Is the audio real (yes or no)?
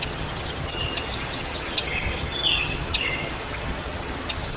no